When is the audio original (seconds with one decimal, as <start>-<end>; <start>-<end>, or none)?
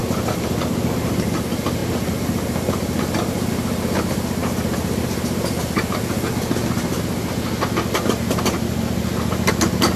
0.0-10.0